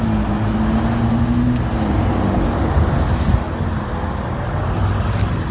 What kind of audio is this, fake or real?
real